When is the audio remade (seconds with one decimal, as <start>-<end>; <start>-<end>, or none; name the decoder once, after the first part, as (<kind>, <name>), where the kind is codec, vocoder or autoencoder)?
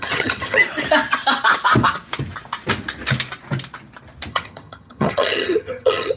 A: 0.0-0.6 (vocoder, HiFi-GAN); 4.3-6.2